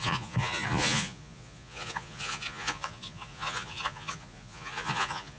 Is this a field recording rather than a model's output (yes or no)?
no